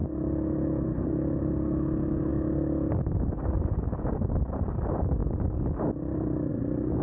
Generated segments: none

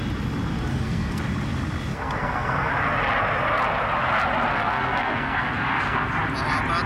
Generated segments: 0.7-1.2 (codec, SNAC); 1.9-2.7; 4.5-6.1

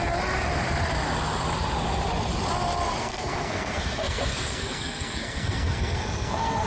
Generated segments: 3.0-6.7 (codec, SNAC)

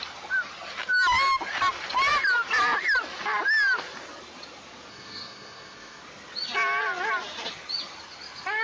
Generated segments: 4.9-6.0 (codec, SNAC)

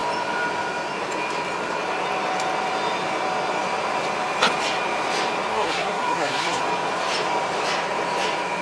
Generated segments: 5.5-6.6 (codec, SNAC)